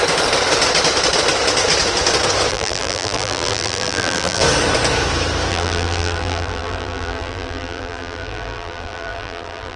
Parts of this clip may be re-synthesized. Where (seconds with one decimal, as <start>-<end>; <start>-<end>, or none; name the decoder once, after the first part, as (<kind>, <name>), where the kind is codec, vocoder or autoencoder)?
2.5-4.4 (vocoder, BigVGAN v2); 5.5-9.8